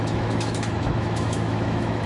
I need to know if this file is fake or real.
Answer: fake